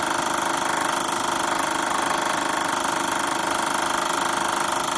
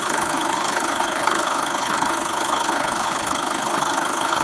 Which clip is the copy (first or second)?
second